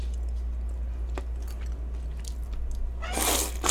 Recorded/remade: recorded